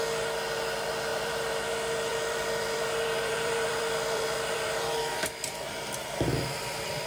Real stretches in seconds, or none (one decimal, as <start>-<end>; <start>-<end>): 0.0-1.1; 1.7-2.1; 4.9-7.1